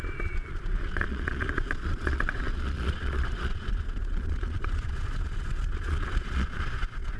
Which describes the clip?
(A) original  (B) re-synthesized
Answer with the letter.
B